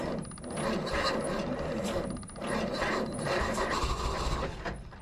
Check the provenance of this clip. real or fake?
real